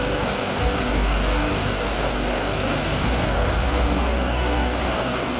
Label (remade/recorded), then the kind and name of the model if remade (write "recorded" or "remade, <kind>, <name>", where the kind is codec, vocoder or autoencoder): remade, codec, DAC